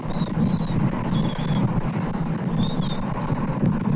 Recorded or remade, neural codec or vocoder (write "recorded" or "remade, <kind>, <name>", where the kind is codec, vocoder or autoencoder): recorded